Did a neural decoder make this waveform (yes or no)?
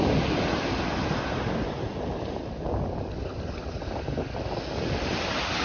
no